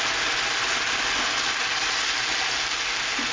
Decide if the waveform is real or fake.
real